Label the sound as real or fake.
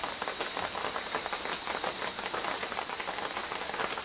real